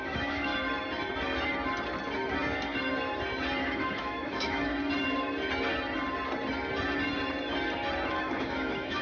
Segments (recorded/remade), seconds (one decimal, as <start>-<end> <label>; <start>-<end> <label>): 0.0-0.5 remade; 0.5-3.6 recorded; 3.6-4.7 remade; 4.7-8.1 recorded; 8.1-9.0 remade